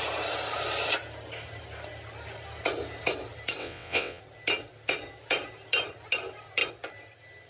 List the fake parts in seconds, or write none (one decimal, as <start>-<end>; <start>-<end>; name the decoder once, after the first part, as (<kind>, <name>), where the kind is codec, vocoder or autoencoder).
3.6-4.2 (vocoder, WaveNeXt)